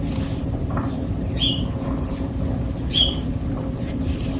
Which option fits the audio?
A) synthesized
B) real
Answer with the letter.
A